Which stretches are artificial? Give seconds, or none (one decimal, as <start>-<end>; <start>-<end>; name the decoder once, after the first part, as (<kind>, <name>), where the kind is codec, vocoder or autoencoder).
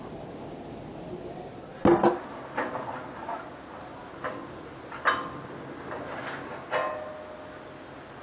none